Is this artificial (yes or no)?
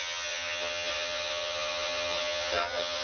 yes